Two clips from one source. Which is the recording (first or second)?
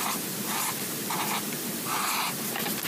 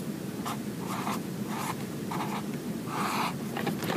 second